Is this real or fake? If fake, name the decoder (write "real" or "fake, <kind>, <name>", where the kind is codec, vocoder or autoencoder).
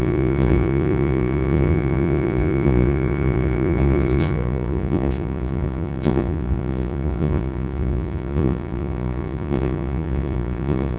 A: fake, vocoder, Vocos